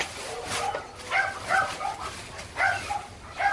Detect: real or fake real